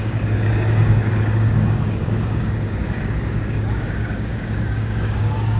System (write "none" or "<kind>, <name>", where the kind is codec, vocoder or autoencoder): codec, DAC